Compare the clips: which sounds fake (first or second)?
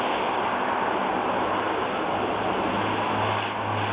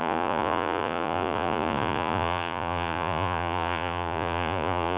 second